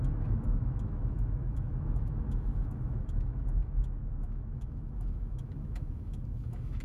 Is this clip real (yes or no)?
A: no